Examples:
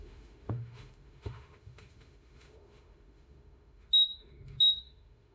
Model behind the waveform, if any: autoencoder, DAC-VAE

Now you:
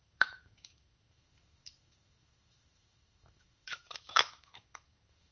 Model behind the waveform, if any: autoencoder, DAC-VAE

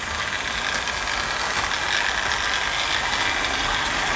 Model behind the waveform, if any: none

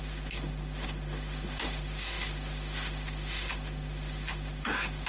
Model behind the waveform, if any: autoencoder, DAC-VAE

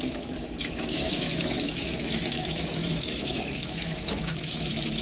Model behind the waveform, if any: autoencoder, DAC-VAE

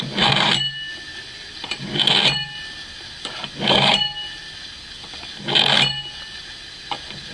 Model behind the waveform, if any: none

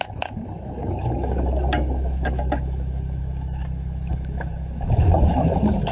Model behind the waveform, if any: autoencoder, DAC-VAE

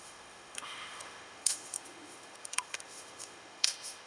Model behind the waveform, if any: autoencoder, DAC-VAE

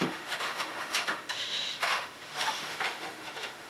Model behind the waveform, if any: autoencoder, DAC-VAE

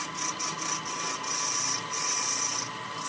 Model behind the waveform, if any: none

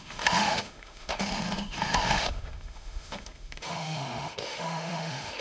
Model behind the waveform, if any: autoencoder, DAC-VAE